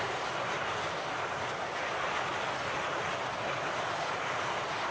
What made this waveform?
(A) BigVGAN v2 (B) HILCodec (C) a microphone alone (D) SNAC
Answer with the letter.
C